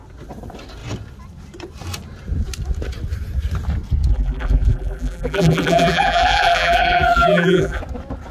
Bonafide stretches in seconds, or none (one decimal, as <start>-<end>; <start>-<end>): 0.0-4.1; 7.8-8.3